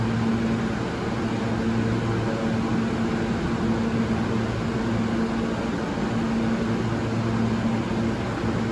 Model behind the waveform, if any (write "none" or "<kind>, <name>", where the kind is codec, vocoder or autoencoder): none